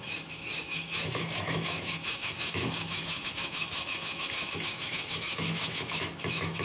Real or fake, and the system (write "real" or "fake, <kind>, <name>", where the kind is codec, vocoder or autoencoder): fake, autoencoder, DAC-VAE